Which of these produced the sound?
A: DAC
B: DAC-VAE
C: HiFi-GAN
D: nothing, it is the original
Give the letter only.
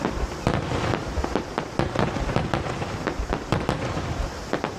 D